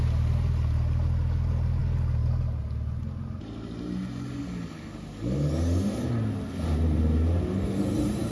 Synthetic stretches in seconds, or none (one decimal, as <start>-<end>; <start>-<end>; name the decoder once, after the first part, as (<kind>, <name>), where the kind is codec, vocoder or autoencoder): none